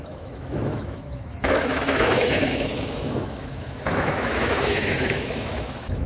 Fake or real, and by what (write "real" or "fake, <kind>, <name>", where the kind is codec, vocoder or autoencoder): fake, autoencoder, DAC-VAE